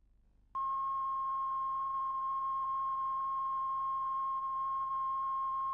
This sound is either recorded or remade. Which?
recorded